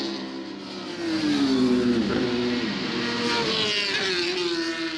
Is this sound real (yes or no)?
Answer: yes